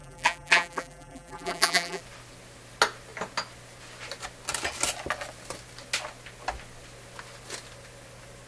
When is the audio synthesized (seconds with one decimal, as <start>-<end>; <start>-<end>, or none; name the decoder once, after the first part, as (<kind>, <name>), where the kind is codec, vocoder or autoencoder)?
0.0-2.0 (vocoder, BigVGAN v2)